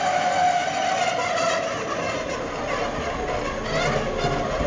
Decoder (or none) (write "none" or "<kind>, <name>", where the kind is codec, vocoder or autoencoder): none